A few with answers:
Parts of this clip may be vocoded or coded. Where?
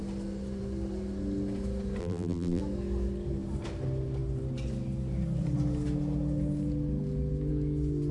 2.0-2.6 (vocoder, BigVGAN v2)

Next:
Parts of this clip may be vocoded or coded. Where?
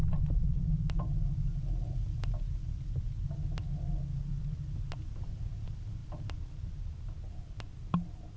none